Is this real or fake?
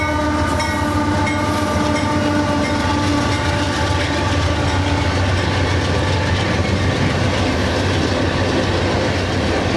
real